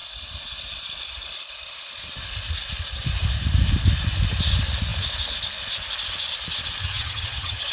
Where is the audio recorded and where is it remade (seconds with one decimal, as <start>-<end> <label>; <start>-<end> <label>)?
0.0-6.8 recorded; 6.8-7.7 remade

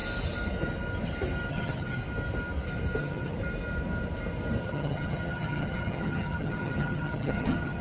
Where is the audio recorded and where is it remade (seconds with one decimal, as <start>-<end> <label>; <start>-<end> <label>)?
0.0-1.5 recorded; 1.5-2.0 remade; 2.0-3.0 recorded; 3.0-3.4 remade; 3.4-4.6 recorded; 4.6-7.8 remade